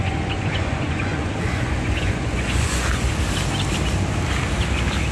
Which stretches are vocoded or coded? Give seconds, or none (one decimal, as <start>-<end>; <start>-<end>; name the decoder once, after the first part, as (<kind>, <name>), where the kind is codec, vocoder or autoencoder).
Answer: 0.0-3.1 (vocoder, Vocos)